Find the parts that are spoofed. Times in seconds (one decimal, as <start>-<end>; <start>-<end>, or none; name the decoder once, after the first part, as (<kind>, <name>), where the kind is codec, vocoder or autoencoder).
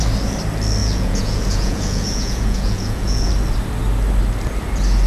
0.8-3.3 (vocoder, Vocos)